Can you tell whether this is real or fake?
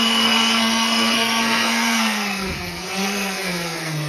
fake